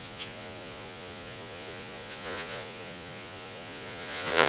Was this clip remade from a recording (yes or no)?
yes